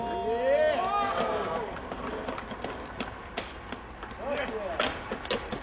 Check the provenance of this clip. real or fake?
real